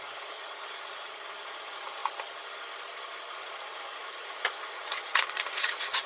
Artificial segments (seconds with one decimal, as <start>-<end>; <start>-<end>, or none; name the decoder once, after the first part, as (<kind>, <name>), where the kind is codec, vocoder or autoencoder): 0.0-2.0 (vocoder, Vocos); 3.3-6.1